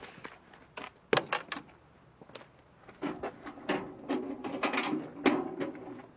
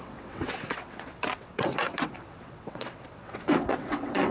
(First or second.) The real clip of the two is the first